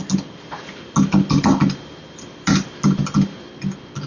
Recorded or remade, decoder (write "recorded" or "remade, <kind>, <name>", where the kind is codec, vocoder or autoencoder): recorded